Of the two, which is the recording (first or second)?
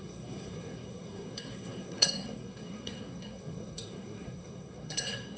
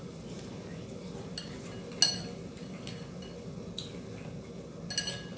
second